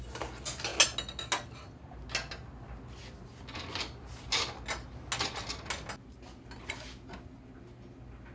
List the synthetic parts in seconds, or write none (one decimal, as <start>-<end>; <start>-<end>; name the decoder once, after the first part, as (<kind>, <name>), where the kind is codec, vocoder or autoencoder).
none